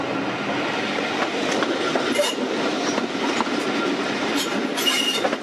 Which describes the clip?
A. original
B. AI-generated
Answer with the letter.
A